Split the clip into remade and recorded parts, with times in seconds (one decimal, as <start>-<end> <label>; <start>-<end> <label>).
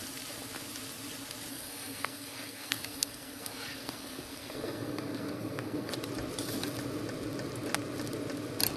0.0-1.5 recorded; 1.5-5.9 remade; 5.9-8.8 recorded